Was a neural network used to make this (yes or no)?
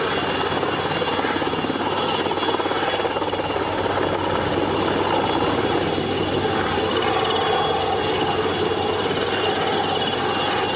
no